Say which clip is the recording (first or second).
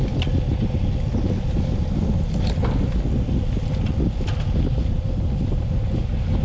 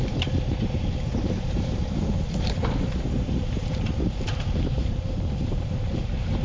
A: first